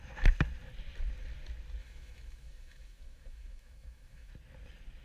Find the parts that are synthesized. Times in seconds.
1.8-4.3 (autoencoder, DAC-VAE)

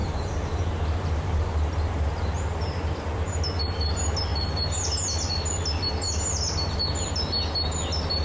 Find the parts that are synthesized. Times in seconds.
0.0-3.4 (vocoder, BigVGAN v2)

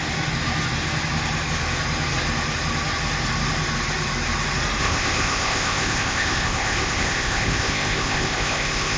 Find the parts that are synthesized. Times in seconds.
4.8-9.0 (codec, ZipCodec)

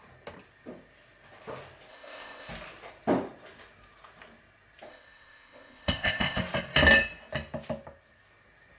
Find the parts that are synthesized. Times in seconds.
1.9-2.5 (codec, ZipCodec); 4.9-6.4

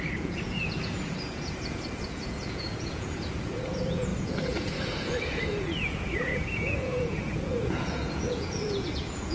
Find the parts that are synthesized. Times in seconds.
0.0-9.3 (vocoder, Vocos)